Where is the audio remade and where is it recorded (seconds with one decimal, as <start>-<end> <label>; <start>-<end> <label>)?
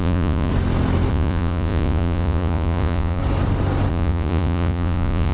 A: 0.0-0.5 remade; 0.5-1.1 recorded; 1.1-3.2 remade; 3.2-3.9 recorded; 3.9-5.3 remade